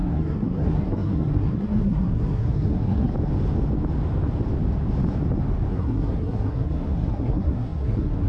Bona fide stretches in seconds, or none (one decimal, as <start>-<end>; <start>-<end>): 3.1-5.7